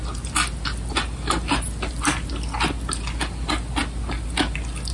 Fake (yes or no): no